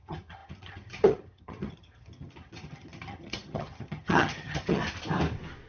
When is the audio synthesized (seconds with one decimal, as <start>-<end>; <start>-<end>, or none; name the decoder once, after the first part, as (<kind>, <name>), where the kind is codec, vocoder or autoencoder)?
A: 0.0-4.8 (vocoder, HiFi-GAN)